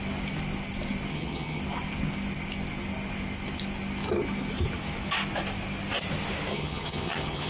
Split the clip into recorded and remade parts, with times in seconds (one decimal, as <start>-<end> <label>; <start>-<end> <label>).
0.0-1.1 recorded; 1.1-1.6 remade; 1.6-6.5 recorded; 6.5-7.5 remade